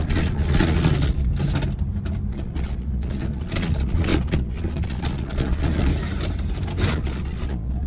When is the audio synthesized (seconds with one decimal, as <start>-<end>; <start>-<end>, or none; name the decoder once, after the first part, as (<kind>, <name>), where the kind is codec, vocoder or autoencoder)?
0.0-1.3 (vocoder, Vocos); 2.3-5.9; 6.9-7.9